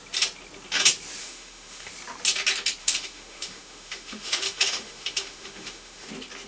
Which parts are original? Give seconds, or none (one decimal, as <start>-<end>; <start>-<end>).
0.0-1.2; 1.9-2.8; 6.1-6.5